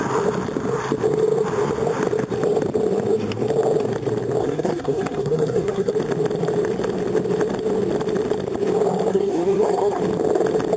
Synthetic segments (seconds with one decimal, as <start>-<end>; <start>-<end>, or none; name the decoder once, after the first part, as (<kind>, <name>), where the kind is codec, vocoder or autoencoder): 4.4-5.9 (codec, SNAC); 9.1-10.0